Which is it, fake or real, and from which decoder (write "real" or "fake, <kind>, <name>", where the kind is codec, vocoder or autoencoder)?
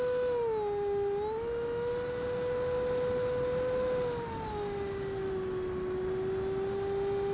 real